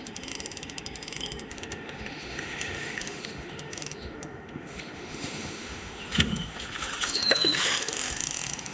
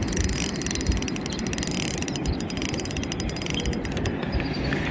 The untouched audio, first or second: second